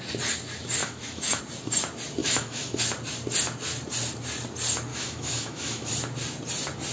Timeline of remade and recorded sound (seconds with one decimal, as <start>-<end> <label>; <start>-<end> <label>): 0.0-0.8 recorded; 0.8-1.4 remade; 1.4-2.2 recorded; 2.2-2.8 remade; 2.8-4.9 recorded; 4.9-5.9 remade; 5.9-6.9 recorded